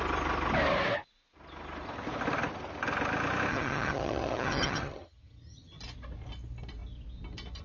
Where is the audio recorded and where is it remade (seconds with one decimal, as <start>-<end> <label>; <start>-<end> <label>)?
0.0-3.5 recorded; 3.5-5.8 remade; 5.8-7.6 recorded